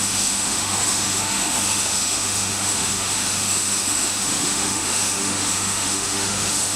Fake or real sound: fake